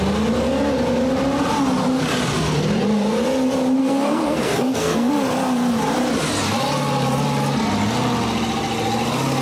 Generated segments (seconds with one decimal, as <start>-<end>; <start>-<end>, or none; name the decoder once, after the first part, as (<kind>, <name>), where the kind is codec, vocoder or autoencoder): 3.8-5.1 (codec, SNAC)